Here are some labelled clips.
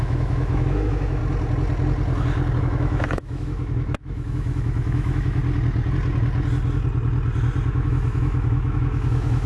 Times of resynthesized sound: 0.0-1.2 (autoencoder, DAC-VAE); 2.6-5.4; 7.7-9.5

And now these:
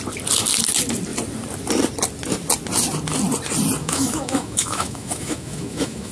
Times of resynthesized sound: 3.8-6.1 (autoencoder, DAC-VAE)

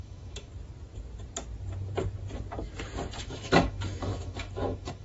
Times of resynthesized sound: 0.0-0.5 (autoencoder, DAC-VAE); 3.2-5.0

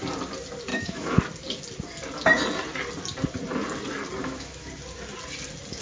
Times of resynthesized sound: 0.7-1.2 (autoencoder, DAC-VAE); 4.2-4.7

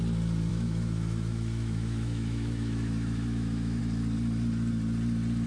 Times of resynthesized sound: 0.5-3.8 (autoencoder, DAC-VAE)